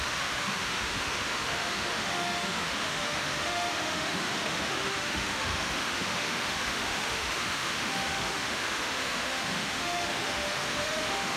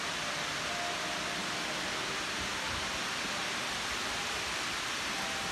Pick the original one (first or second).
second